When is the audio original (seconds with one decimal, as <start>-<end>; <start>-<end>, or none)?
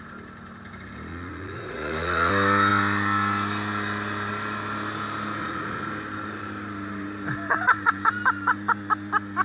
0.0-1.1; 2.3-5.4; 5.9-9.4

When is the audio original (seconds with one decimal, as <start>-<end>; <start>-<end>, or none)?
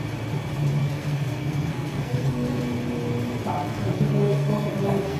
0.0-0.8; 2.6-3.6